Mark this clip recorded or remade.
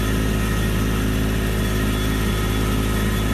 recorded